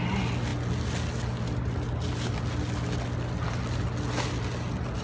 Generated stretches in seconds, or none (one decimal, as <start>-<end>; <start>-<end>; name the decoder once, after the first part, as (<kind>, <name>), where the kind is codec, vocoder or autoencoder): none